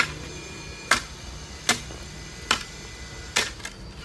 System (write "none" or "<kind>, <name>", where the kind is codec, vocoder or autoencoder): none